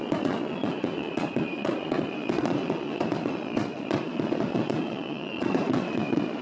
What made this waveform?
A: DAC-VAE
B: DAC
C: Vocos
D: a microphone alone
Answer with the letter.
C